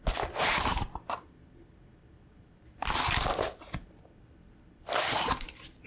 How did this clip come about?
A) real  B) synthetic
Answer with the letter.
B